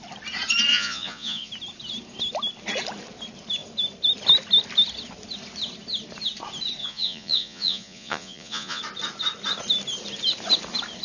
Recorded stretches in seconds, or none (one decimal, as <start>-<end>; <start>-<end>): 0.0-0.7; 1.5-6.8; 8.8-11.0